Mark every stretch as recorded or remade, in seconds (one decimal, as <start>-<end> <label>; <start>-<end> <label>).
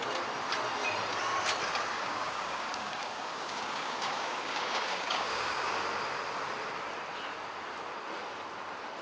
0.0-1.9 recorded; 1.9-5.7 remade; 5.7-9.0 recorded